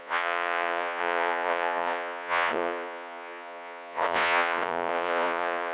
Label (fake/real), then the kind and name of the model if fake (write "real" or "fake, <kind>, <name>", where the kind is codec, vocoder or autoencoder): fake, vocoder, Vocos